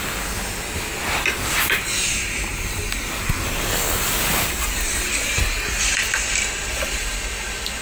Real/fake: real